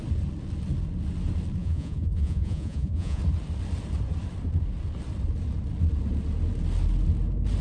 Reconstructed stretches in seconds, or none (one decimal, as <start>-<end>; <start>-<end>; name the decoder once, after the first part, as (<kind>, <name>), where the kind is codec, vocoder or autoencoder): 1.6-3.2 (vocoder, Vocos)

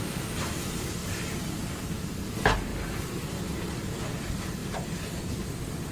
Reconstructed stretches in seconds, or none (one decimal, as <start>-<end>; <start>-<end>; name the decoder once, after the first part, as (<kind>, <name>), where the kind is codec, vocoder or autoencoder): none

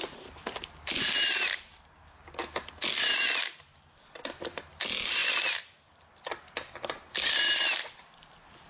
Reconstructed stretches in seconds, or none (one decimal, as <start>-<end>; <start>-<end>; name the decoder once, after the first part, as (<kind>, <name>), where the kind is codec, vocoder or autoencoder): none

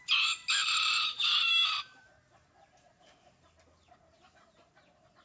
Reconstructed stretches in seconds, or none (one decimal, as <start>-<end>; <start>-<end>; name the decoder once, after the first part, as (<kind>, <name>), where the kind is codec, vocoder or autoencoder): 0.6-2.1 (vocoder, BigVGAN v2)

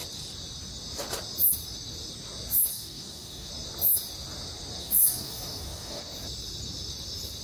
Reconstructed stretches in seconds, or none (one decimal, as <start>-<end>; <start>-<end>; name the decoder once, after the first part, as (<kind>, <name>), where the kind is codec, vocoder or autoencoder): 2.7-3.5 (codec, DAC); 4.8-6.0

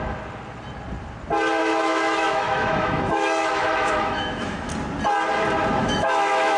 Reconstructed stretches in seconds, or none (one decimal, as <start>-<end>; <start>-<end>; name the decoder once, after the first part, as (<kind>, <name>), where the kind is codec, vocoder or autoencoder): 1.6-4.7 (autoencoder, DAC-VAE); 5.8-6.6

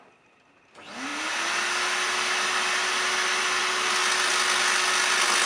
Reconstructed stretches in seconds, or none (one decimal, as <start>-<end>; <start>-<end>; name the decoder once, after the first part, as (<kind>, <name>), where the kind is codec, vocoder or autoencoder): none